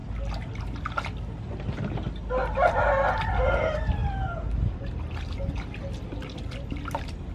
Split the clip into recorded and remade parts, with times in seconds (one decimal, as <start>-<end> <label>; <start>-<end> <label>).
0.0-3.2 recorded; 3.2-4.0 remade; 4.0-5.4 recorded; 5.4-7.3 remade